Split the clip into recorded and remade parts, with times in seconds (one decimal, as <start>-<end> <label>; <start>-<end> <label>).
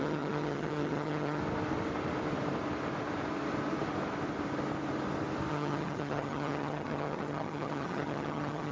0.0-1.4 remade; 1.4-5.5 recorded; 5.5-8.7 remade